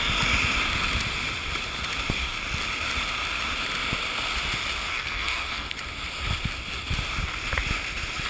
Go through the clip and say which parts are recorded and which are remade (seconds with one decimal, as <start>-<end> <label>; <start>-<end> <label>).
0.0-4.9 recorded; 4.9-5.7 remade; 5.7-8.3 recorded